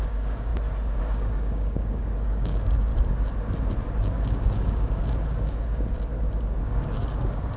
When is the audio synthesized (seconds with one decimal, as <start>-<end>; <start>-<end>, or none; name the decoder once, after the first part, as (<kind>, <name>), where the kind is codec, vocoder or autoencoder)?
0.0-0.5 (codec, DAC); 1.0-2.9; 4.0-6.1; 6.6-7.6